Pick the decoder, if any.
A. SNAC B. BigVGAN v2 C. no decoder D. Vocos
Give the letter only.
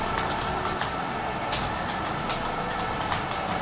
C